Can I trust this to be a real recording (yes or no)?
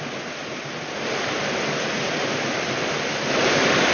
yes